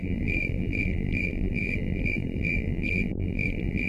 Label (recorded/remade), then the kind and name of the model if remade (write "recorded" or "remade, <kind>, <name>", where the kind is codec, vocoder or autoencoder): remade, vocoder, BigVGAN v2